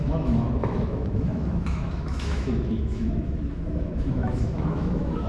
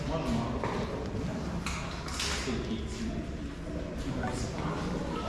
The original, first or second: second